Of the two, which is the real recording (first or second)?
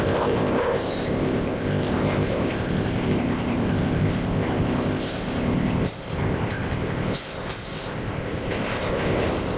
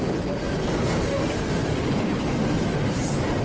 second